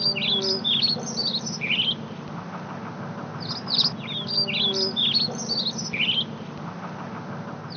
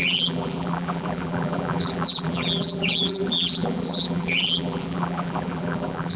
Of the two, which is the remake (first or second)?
second